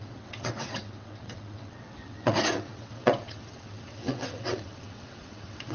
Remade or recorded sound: remade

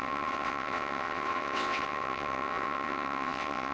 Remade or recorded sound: remade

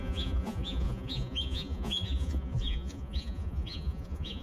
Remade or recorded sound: remade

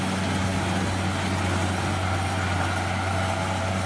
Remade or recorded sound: recorded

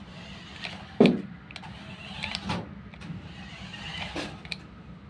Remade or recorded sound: recorded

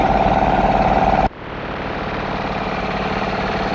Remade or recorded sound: remade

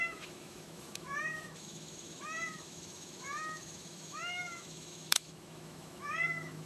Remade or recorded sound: remade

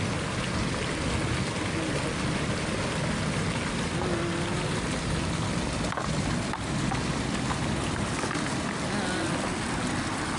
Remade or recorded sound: recorded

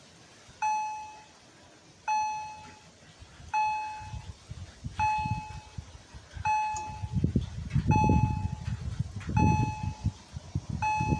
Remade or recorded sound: recorded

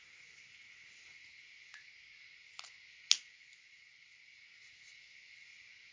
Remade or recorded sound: recorded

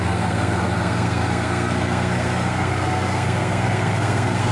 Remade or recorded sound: remade